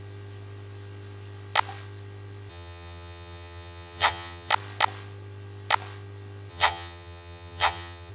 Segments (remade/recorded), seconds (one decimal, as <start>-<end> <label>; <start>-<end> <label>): 0.0-2.5 recorded; 2.5-4.5 remade; 4.5-6.5 recorded; 6.5-8.1 remade